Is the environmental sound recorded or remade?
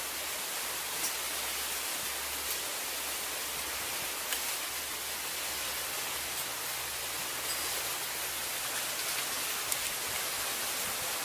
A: recorded